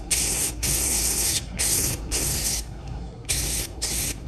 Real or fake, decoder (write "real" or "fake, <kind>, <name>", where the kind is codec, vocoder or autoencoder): fake, codec, SNAC